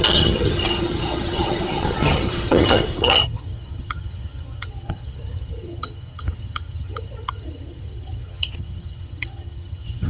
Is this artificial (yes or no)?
yes